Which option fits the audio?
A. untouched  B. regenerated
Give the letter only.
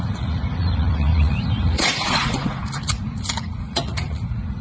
B